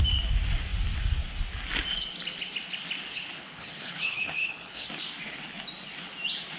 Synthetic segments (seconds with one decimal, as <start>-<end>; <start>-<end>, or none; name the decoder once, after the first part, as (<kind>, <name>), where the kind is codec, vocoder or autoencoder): 3.1-4.9 (codec, HILCodec)